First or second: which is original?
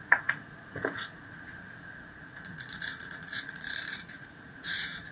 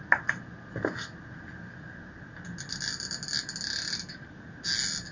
second